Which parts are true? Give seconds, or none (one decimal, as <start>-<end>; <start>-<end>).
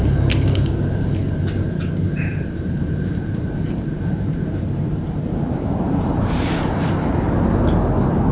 0.0-2.3; 7.3-8.3